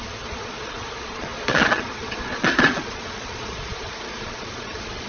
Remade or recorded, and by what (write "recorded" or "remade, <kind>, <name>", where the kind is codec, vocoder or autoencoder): remade, vocoder, Vocos